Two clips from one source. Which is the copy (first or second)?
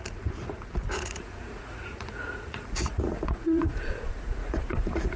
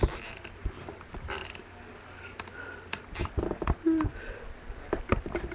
first